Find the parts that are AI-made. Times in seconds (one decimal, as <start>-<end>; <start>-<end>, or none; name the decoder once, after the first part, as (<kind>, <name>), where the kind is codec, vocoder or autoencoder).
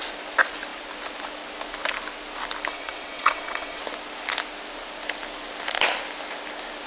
2.7-3.8 (vocoder, WaveNeXt)